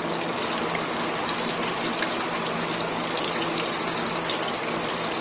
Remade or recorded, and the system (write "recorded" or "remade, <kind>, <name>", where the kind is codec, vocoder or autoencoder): recorded